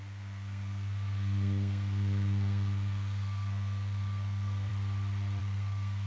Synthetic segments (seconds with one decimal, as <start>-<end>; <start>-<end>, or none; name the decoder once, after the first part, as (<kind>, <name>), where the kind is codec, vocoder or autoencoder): 0.0-4.7 (codec, SNAC); 5.4-6.1